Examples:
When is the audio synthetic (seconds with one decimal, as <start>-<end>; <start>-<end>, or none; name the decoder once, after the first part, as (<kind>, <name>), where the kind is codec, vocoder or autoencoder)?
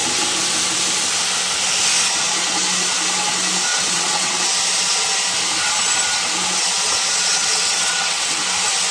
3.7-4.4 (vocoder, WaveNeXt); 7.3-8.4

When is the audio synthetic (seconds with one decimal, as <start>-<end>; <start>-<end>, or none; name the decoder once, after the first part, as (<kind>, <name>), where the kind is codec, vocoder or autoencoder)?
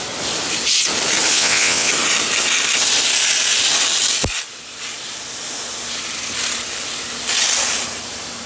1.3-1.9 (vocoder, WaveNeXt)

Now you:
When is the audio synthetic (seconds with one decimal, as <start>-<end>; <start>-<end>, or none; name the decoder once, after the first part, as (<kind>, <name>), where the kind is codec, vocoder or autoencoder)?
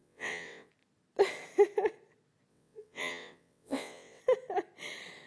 0.0-0.7 (vocoder, WaveNeXt); 2.5-4.2